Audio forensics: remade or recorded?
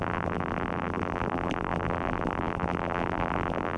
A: remade